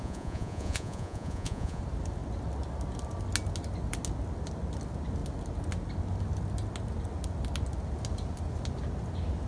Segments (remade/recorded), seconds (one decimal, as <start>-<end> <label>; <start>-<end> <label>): 0.0-1.8 remade; 1.8-9.5 recorded